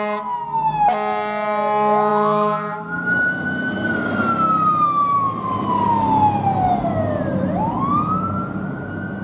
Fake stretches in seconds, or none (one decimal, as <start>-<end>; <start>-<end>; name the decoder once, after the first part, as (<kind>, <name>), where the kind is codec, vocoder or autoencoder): none